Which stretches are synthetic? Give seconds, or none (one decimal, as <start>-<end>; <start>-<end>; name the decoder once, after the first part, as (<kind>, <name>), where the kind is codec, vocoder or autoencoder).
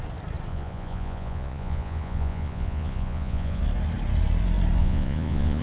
0.5-3.6 (vocoder, Vocos); 4.8-5.6